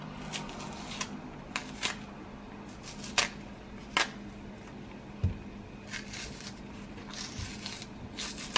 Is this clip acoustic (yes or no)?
yes